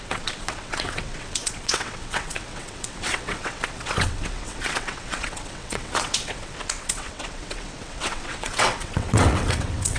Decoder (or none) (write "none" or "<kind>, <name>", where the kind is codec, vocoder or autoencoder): vocoder, WaveNeXt